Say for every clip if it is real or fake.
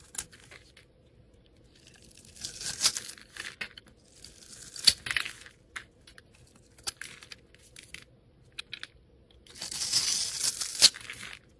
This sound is real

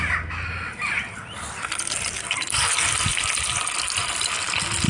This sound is real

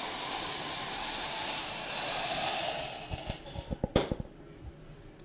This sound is real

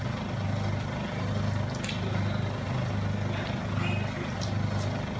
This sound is real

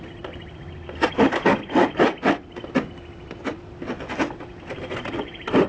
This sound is real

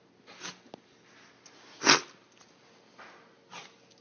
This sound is real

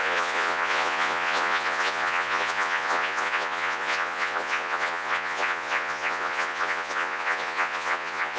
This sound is fake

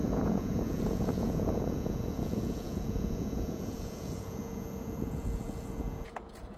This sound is fake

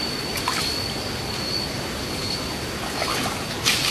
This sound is real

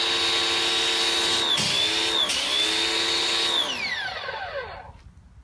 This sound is real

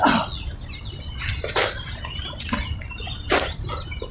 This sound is real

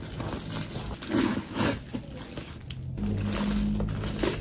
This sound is real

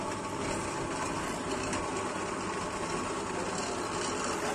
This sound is real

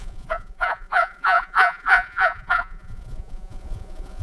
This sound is fake